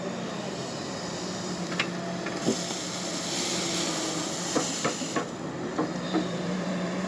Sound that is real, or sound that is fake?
fake